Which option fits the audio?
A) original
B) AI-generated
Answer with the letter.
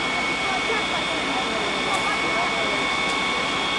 A